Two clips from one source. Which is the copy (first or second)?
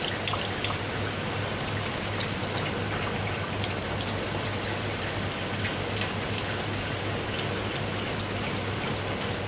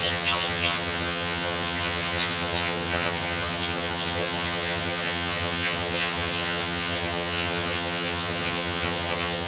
second